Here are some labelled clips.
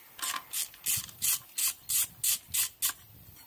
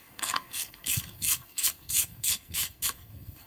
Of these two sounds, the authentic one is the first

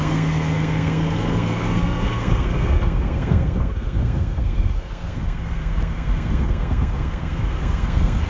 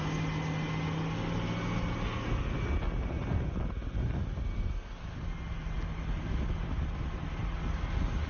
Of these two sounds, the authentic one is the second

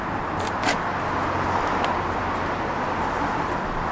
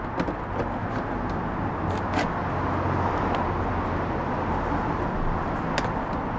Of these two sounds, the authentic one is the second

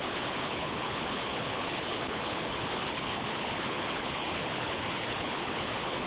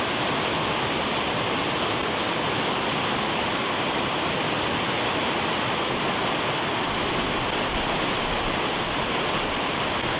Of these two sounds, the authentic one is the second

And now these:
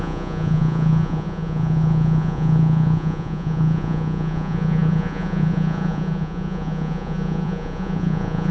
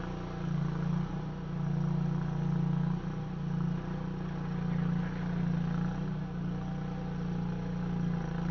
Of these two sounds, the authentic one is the second